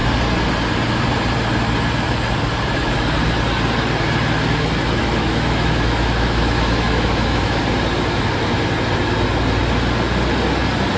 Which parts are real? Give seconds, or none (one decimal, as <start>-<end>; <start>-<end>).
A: 0.0-5.0; 7.6-11.0